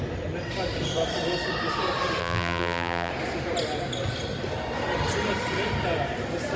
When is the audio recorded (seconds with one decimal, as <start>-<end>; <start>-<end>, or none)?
0.0-2.2; 3.1-6.6